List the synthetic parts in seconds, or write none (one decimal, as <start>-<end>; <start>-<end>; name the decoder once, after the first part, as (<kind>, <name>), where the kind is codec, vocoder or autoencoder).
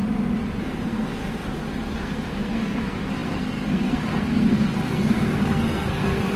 0.6-6.4 (codec, SNAC)